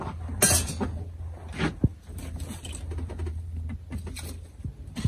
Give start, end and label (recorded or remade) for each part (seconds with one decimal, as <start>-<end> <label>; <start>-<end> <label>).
0.0-5.1 recorded